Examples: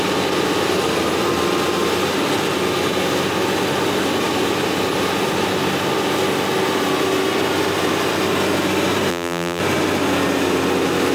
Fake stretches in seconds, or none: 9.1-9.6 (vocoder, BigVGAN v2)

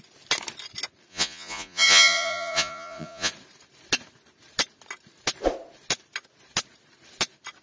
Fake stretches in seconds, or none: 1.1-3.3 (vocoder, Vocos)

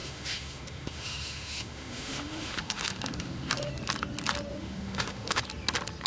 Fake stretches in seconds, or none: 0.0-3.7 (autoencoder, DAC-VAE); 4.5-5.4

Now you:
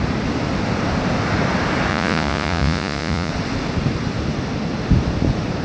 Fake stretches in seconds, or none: 1.9-3.3 (vocoder, Vocos)